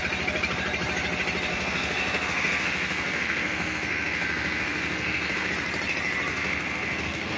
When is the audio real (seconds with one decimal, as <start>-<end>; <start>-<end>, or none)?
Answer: 0.0-1.5; 5.5-6.3